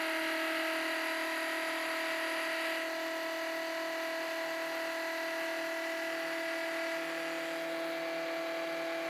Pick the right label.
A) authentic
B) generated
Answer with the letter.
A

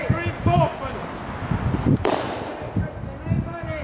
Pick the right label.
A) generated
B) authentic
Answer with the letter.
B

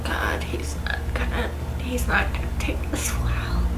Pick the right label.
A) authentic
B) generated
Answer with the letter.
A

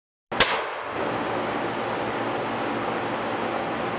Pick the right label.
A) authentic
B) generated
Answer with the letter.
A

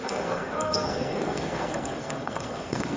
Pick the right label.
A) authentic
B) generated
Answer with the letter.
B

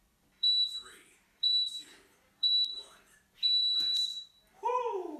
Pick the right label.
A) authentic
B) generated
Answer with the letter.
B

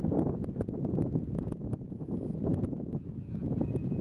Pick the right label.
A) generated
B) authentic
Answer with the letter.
A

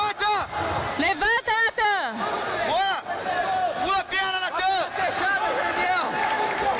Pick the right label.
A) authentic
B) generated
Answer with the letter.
A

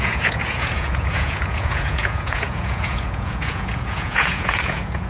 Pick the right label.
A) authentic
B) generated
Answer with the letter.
B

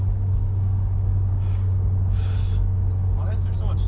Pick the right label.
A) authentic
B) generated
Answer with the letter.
B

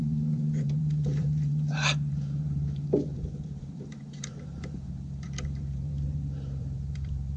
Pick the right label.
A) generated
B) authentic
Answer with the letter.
A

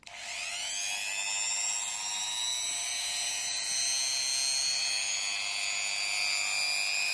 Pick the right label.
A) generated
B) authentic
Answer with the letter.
B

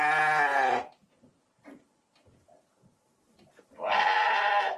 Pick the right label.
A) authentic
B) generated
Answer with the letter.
A